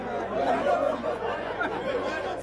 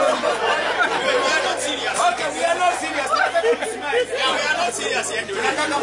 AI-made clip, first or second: first